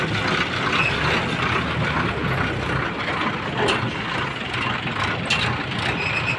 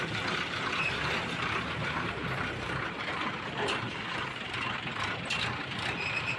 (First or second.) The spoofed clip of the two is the second